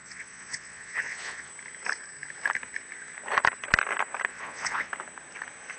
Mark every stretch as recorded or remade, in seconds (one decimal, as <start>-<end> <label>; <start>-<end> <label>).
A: 0.0-1.5 remade; 1.5-4.3 recorded; 4.3-4.9 remade; 4.9-5.8 recorded

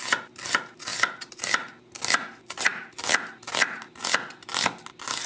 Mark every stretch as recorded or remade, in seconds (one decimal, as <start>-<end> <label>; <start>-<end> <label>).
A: 0.0-5.3 recorded

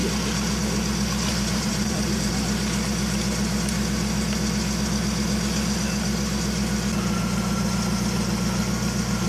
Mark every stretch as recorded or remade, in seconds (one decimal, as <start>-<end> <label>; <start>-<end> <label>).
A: 0.0-1.3 recorded; 1.3-2.3 remade; 2.3-9.3 recorded

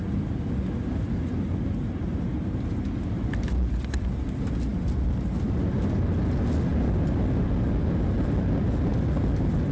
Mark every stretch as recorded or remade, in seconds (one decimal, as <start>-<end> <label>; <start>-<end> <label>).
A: 0.0-9.7 recorded